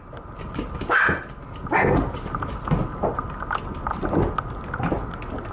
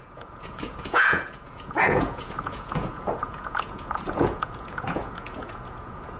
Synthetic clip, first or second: second